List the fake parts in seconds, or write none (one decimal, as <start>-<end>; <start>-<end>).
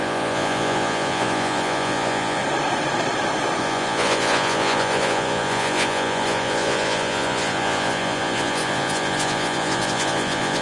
0.0-2.4; 3.6-10.6